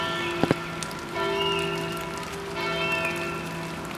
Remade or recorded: recorded